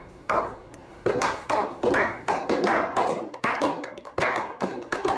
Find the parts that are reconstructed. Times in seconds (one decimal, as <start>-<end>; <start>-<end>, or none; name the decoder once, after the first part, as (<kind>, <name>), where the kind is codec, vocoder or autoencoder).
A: 0.0-5.2 (codec, SNAC)